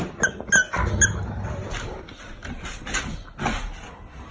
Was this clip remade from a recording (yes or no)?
no